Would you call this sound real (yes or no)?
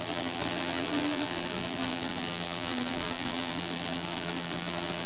no